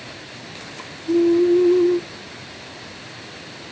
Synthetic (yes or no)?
no